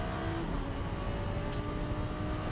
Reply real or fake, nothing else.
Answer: real